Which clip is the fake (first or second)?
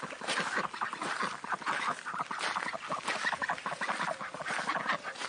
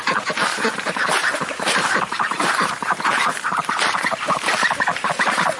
second